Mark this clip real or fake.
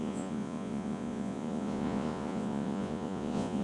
fake